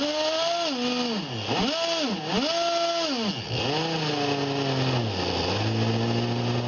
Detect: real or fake real